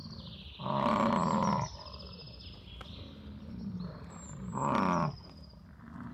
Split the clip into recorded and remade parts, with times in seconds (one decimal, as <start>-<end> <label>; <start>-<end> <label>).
0.0-6.1 recorded